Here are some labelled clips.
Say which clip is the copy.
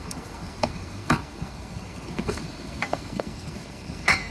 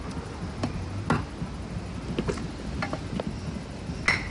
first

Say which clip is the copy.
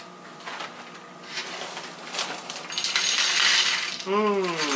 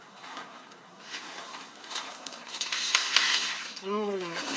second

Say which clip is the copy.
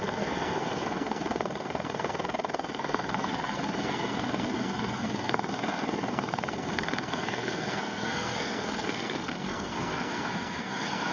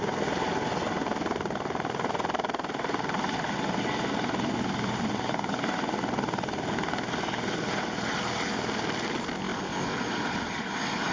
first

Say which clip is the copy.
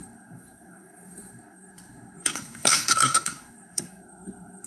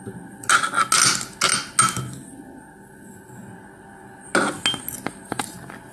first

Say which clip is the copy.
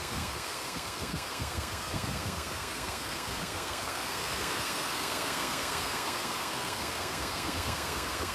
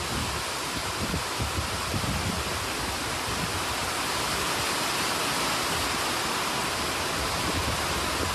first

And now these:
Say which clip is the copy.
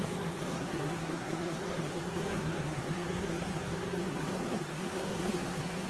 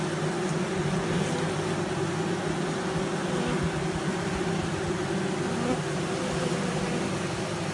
first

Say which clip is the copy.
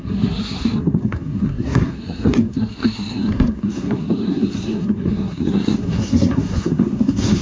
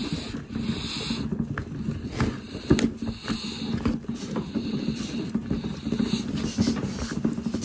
first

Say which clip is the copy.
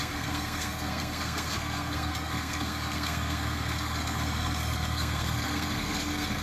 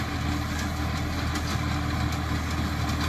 first